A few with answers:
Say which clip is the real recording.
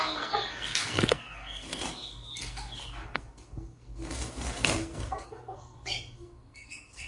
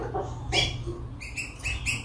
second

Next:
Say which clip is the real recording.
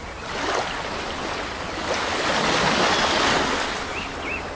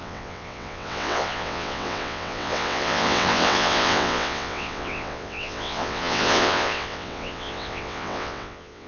first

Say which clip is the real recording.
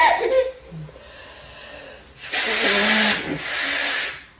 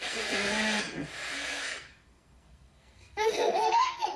first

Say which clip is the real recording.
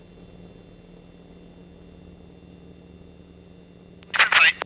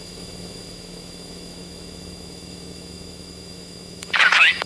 first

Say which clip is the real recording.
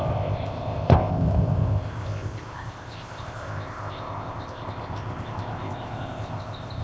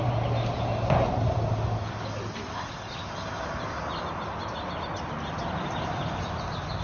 second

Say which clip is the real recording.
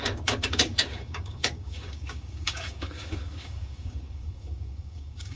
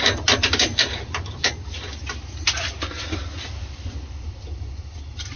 second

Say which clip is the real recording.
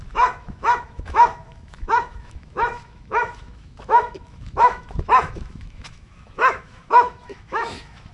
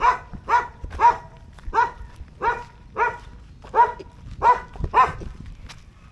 second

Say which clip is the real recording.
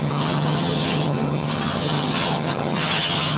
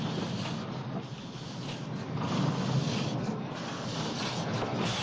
second